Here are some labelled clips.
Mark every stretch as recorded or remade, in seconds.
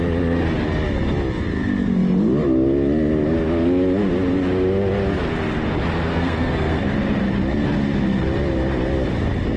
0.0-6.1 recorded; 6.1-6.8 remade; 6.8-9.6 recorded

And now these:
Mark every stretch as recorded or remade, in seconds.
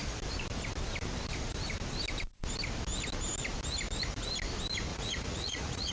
0.0-4.9 recorded; 4.9-5.9 remade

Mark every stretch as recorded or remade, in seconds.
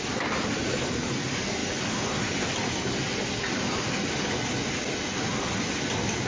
0.0-6.3 recorded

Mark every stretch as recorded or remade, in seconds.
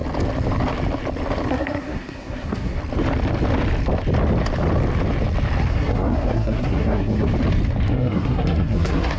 0.0-1.5 recorded; 1.5-2.8 remade; 2.8-5.7 recorded; 5.7-7.3 remade; 7.3-7.9 recorded; 7.9-9.2 remade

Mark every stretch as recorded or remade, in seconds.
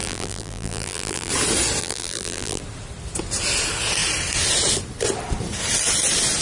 0.0-1.3 remade; 1.3-1.8 recorded; 1.8-2.6 remade; 2.6-6.4 recorded